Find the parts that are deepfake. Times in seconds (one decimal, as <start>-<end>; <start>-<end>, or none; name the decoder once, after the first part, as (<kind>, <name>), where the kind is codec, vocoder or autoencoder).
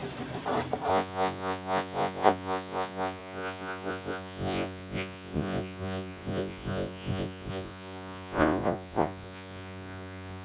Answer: 0.9-10.4 (vocoder, Vocos)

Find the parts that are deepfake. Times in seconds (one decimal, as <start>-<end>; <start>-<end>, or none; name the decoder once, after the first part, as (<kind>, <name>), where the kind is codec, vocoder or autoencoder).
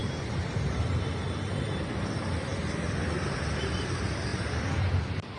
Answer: 0.0-1.1 (vocoder, BigVGAN v2); 4.3-5.0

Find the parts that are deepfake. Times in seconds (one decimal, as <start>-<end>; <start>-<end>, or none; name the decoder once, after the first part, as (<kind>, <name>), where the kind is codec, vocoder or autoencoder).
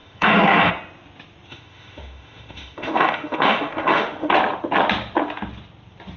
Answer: 0.0-0.7 (autoencoder, DAC-VAE); 1.5-4.3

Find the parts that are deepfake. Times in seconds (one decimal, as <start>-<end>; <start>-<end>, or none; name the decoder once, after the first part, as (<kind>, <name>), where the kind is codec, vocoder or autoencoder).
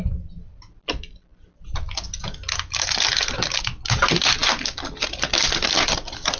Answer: none